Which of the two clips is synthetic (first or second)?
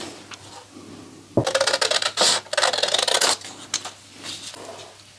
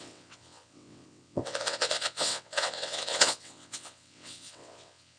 second